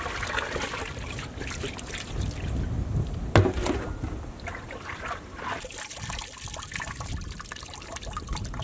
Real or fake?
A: real